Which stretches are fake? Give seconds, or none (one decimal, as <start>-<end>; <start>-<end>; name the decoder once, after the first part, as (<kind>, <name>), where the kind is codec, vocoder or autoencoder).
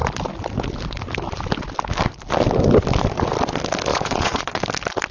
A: 3.9-4.6 (vocoder, Vocos)